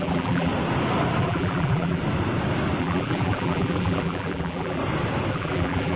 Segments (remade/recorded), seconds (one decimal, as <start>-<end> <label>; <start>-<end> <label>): 0.0-0.5 remade; 0.5-1.2 recorded; 1.2-2.0 remade; 2.0-2.8 recorded; 2.8-4.8 remade; 4.8-5.3 recorded; 5.3-6.0 remade